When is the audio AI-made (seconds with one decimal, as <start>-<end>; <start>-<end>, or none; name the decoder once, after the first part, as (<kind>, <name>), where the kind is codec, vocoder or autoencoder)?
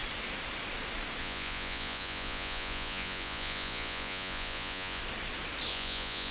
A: 1.2-5.0 (vocoder, Vocos); 5.7-6.3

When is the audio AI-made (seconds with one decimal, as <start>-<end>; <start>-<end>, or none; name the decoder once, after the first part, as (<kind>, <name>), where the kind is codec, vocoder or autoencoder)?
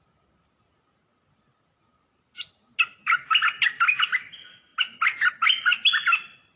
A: none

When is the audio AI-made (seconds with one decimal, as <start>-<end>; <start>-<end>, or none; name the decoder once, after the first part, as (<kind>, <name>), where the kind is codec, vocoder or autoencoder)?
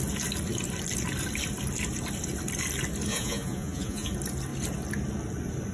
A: 3.1-4.1 (vocoder, Vocos)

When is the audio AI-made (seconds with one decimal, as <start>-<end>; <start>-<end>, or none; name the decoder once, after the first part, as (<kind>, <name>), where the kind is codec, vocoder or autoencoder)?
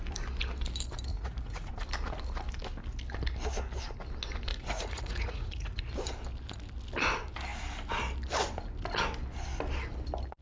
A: 1.1-1.7 (vocoder, Vocos); 4.5-5.8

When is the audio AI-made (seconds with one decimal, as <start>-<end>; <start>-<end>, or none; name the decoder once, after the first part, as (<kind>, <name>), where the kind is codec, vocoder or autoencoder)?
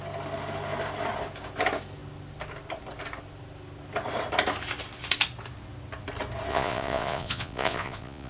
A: 6.5-8.3 (vocoder, Vocos)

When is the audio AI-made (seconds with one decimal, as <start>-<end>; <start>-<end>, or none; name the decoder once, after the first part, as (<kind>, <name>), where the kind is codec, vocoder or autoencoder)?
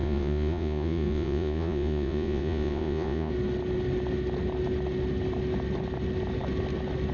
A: 0.0-3.3 (vocoder, Vocos)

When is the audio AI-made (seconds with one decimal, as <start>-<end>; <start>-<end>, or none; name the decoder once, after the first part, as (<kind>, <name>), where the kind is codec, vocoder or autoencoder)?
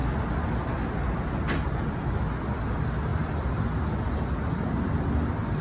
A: none